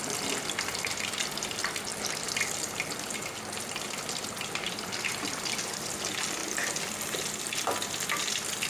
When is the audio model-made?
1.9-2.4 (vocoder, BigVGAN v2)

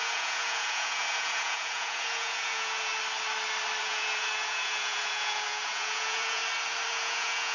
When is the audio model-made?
0.0-2.9 (vocoder, Vocos); 3.8-6.4; 6.9-7.5

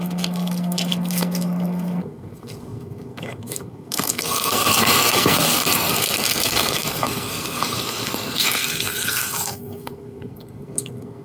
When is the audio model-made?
0.0-11.2 (codec, SNAC)